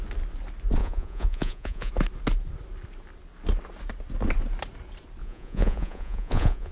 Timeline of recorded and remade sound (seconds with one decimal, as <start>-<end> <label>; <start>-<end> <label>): 0.0-0.8 recorded; 0.8-1.9 remade; 1.9-5.2 recorded; 5.2-6.7 remade